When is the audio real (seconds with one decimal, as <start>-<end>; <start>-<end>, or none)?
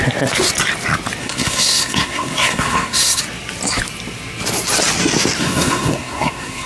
0.0-1.2; 3.2-5.4